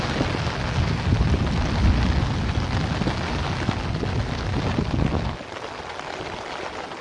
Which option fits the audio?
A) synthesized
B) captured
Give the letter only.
B